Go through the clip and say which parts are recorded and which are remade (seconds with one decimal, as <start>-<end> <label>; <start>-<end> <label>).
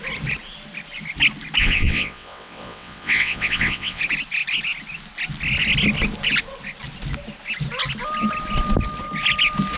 0.0-1.6 recorded; 1.6-4.0 remade; 4.0-9.8 recorded